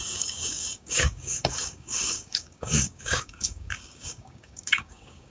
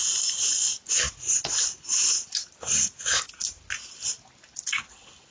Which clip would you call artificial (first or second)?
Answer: first